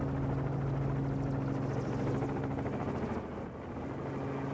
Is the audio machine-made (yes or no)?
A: no